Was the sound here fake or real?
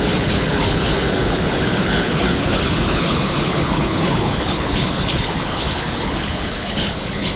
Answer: fake